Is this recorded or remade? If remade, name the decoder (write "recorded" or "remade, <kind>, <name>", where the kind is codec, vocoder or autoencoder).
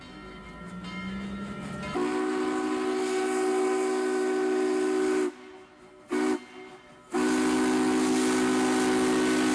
recorded